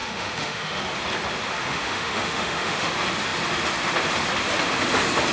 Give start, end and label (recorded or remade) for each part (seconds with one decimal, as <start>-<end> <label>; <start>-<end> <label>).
0.0-0.8 remade; 0.8-1.6 recorded; 1.6-2.9 remade; 2.9-5.3 recorded

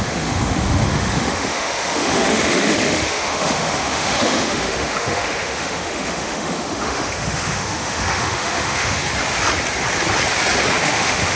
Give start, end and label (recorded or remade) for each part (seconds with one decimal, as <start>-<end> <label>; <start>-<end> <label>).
0.0-9.0 remade; 9.0-10.8 recorded; 10.8-11.4 remade

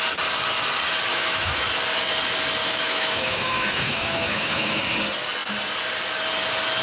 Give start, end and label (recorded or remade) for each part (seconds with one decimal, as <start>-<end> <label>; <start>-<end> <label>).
0.0-1.1 recorded; 1.1-1.6 remade; 1.6-2.6 recorded; 2.6-4.8 remade; 4.8-6.8 recorded

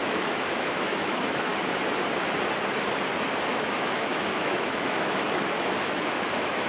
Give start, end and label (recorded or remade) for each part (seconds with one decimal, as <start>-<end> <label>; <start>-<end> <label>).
0.0-1.5 remade; 1.5-3.5 recorded; 3.5-6.7 remade